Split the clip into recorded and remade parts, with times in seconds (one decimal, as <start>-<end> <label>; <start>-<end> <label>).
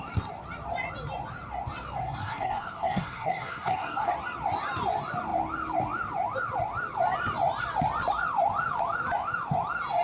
0.0-2.0 recorded; 2.0-4.1 remade; 4.1-10.0 recorded